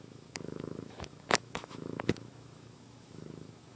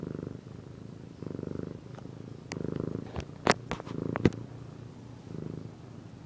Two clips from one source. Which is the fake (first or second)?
first